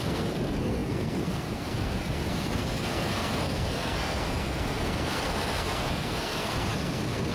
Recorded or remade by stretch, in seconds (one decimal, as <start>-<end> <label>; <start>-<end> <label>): 0.0-7.3 remade